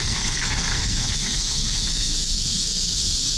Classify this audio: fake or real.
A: fake